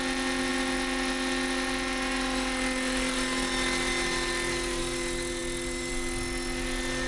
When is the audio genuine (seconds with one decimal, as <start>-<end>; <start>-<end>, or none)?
0.0-7.1